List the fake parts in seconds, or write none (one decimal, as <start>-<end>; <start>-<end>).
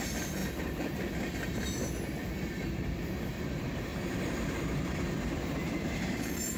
0.0-0.4; 3.4-3.9; 5.1-6.6